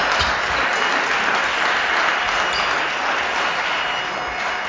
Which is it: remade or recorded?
recorded